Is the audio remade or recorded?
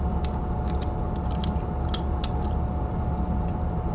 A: recorded